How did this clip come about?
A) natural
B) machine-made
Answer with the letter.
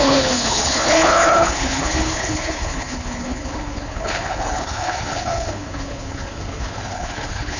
B